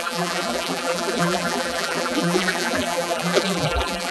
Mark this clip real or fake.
fake